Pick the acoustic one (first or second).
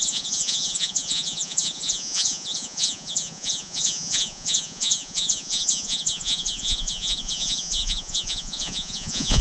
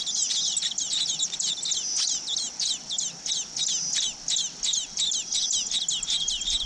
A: second